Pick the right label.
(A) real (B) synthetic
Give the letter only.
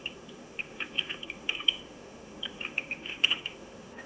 B